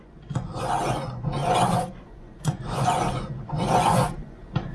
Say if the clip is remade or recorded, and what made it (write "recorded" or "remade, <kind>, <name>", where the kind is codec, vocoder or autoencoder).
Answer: remade, vocoder, Vocos